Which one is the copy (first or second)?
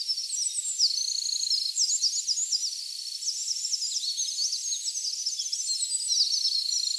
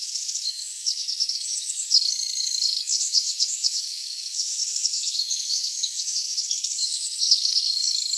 second